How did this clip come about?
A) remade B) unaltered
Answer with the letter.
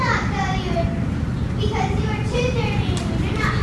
B